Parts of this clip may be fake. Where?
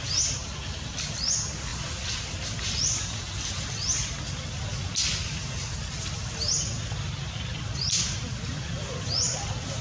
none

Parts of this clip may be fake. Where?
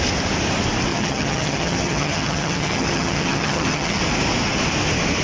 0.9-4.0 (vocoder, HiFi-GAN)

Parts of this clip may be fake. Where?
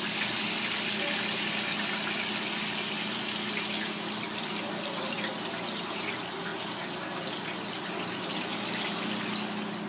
none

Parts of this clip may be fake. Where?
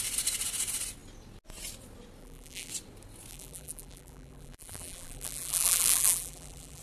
2.2-2.7 (vocoder, BigVGAN v2); 3.3-6.8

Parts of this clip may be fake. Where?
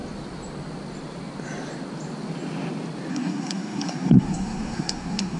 3.1-5.4 (codec, SNAC)